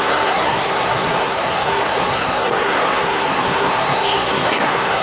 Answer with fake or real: fake